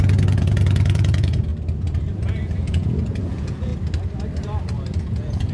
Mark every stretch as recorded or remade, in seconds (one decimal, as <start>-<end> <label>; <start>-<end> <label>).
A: 0.0-1.5 remade; 1.5-2.3 recorded; 2.3-3.7 remade; 3.7-5.0 recorded; 5.0-5.5 remade